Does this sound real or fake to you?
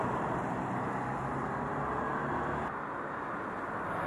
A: real